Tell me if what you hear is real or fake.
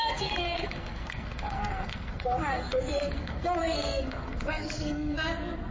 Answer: fake